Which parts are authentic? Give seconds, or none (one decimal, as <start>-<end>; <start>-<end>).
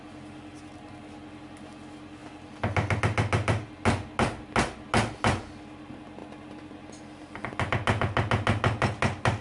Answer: 0.0-9.4